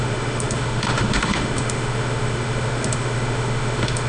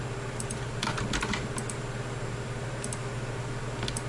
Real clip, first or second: second